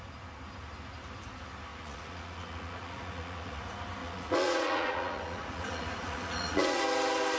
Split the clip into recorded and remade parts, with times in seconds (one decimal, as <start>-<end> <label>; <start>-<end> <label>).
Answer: 0.0-1.7 recorded; 1.7-3.6 remade; 3.6-4.0 recorded; 4.0-6.8 remade; 6.8-7.4 recorded